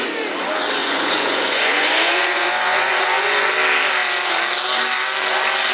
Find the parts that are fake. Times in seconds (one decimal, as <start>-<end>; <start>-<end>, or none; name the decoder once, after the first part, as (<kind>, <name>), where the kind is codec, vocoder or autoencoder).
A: 0.8-3.5 (vocoder, Vocos)